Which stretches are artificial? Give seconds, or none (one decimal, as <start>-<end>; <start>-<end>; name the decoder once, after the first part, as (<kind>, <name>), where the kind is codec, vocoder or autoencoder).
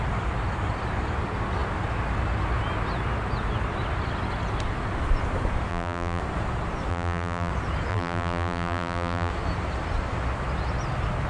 5.7-6.2 (vocoder, BigVGAN v2); 6.9-7.5; 7.9-9.3